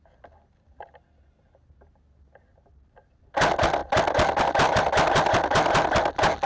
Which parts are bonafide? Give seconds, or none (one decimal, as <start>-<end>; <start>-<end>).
0.0-6.5